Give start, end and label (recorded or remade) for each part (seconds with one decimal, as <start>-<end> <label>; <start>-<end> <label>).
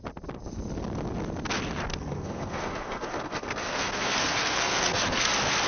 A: 0.0-1.9 recorded; 1.9-5.3 remade; 5.3-5.7 recorded